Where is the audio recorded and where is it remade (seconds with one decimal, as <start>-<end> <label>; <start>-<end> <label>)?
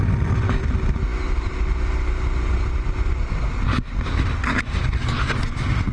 0.0-5.9 recorded